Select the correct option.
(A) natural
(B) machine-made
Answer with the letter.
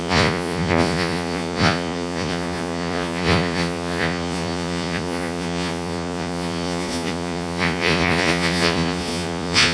B